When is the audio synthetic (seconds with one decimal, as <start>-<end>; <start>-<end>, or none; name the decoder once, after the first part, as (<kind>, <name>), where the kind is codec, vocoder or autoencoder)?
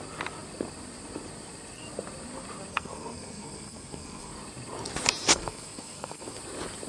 2.7-4.3 (codec, SNAC); 5.3-6.4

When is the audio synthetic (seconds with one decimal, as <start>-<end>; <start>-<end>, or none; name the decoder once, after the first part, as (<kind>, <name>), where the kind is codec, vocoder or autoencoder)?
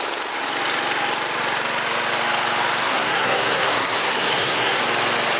2.8-4.8 (codec, SNAC)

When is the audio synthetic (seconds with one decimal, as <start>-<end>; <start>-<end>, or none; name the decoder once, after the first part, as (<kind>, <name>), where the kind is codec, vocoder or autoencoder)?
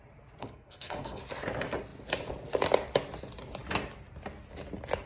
0.4-1.2 (codec, SNAC)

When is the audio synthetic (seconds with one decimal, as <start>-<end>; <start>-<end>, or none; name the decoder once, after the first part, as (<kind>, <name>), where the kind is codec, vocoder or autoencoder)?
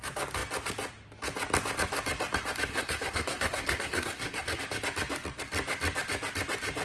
2.7-4.6 (codec, SNAC)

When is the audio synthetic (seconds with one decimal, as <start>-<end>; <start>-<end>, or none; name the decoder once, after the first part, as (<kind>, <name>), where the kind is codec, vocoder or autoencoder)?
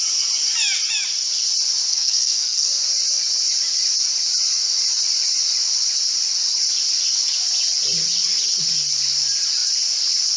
1.9-2.7 (codec, SNAC)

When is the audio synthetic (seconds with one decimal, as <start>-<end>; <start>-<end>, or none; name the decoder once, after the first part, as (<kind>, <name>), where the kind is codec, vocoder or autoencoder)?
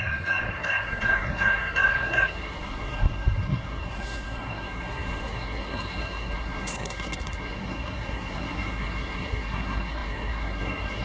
0.0-11.0 (codec, SNAC)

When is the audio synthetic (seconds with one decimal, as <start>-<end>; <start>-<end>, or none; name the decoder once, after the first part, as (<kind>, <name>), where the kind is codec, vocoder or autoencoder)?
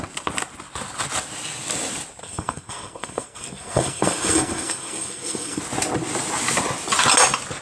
2.2-5.6 (codec, SNAC)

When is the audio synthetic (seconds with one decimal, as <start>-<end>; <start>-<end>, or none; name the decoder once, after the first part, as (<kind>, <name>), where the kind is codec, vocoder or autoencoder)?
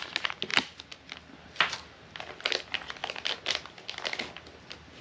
none